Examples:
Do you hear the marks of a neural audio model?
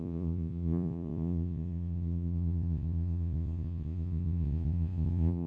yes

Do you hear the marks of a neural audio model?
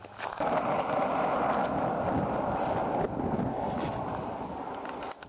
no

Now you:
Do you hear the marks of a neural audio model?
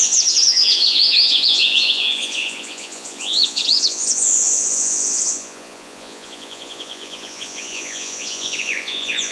yes